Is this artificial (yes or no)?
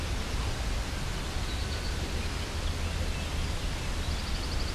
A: no